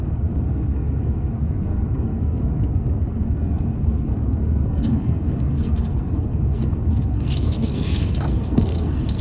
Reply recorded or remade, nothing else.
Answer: remade